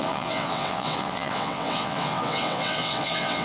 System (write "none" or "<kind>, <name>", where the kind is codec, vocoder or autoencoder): vocoder, WaveNeXt